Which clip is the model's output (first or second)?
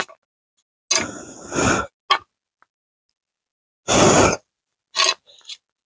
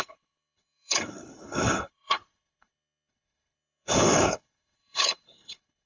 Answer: second